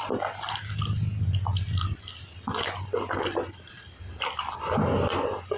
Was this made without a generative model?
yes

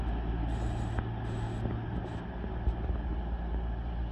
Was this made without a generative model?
yes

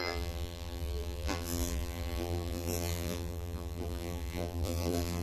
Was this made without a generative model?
no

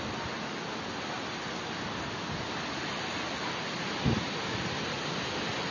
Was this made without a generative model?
yes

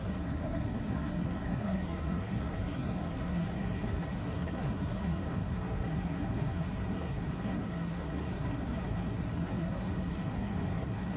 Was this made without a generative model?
no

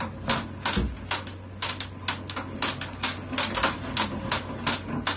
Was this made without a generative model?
yes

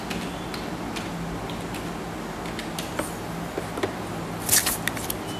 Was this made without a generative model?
yes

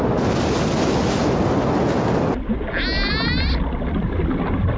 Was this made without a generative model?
yes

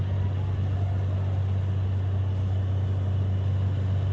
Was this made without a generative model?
yes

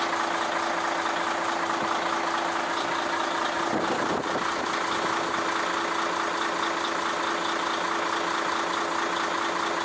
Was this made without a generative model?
yes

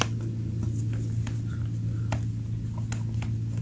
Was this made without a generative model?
yes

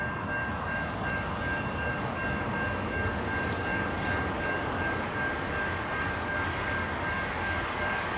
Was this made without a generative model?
no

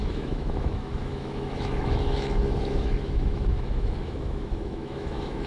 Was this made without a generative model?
no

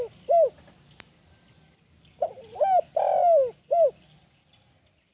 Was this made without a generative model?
yes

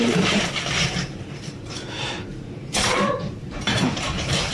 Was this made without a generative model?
no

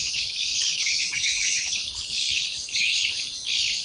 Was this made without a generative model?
no